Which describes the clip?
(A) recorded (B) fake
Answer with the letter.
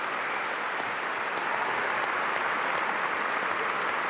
A